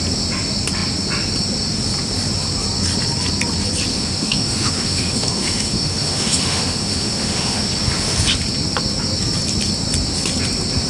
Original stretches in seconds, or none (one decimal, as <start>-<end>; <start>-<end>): 0.0-3.9; 7.7-10.9